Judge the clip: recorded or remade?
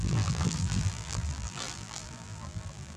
remade